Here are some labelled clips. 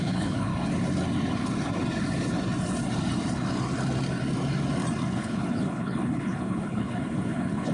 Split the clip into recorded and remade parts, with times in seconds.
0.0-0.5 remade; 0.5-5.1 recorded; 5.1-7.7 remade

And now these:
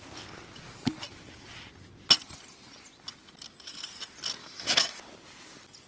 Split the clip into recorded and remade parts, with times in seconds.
0.0-4.4 recorded; 4.4-5.0 remade; 5.0-5.9 recorded

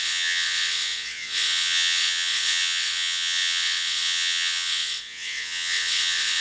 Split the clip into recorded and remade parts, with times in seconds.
0.0-6.4 remade

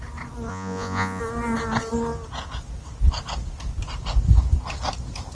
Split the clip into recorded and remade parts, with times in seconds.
0.0-0.5 recorded; 0.5-1.2 remade; 1.2-5.3 recorded

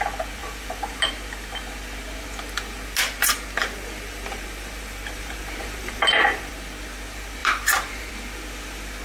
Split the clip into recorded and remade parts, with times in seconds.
0.0-0.4 recorded; 0.4-1.1 remade; 1.1-3.6 recorded; 3.6-6.5 remade; 6.5-7.4 recorded; 7.4-8.1 remade; 8.1-9.0 recorded

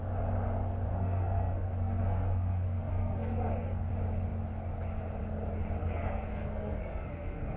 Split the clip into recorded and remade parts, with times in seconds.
0.0-0.9 recorded; 0.9-3.9 remade; 3.9-5.8 recorded; 5.8-7.6 remade

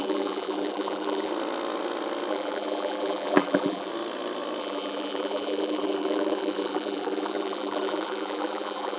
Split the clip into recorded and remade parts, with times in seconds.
0.0-1.3 remade; 1.3-2.3 recorded; 2.3-3.9 remade; 3.9-4.6 recorded; 4.6-9.0 remade